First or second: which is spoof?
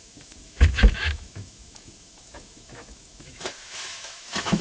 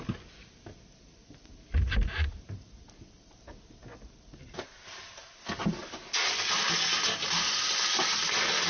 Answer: first